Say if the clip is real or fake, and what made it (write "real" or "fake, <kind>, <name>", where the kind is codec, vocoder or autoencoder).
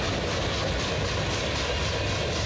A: real